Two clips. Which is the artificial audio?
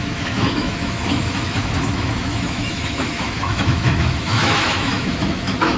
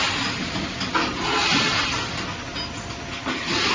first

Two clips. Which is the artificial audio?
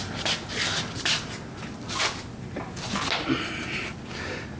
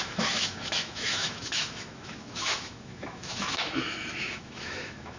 second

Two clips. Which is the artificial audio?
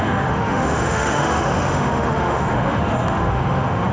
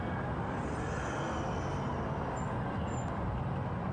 first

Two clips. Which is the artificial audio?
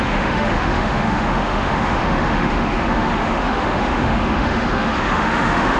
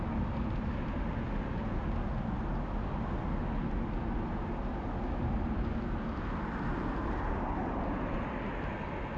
first